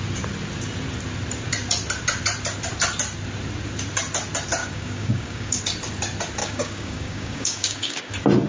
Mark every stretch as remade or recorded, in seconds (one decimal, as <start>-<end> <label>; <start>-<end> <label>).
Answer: 0.0-4.6 recorded; 4.6-5.6 remade; 5.6-6.4 recorded; 6.4-8.1 remade; 8.1-8.5 recorded